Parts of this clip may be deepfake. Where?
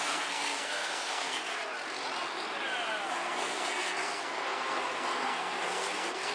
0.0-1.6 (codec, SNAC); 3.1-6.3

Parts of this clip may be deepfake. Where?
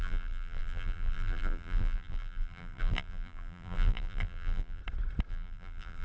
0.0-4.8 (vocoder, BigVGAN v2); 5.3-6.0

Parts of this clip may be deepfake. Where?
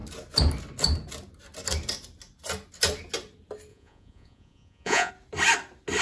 3.7-5.1 (vocoder, Vocos)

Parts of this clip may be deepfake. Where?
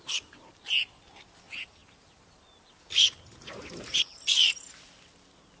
none